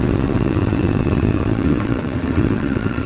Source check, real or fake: fake